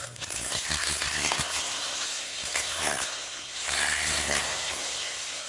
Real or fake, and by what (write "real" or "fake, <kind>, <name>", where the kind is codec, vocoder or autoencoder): fake, codec, SNAC